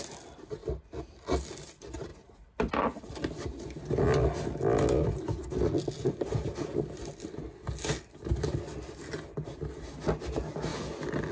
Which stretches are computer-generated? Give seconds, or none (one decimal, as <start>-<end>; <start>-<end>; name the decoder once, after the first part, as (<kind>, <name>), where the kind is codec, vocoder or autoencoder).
none